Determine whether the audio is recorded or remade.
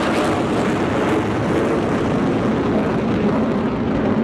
recorded